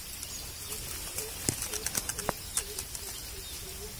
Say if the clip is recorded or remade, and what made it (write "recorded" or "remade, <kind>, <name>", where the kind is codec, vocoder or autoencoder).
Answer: recorded